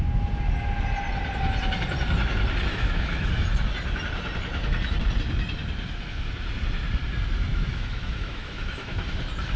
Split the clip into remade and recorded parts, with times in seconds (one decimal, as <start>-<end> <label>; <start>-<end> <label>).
0.0-2.7 recorded; 2.7-3.3 remade; 3.3-7.5 recorded; 7.5-9.2 remade; 9.2-9.6 recorded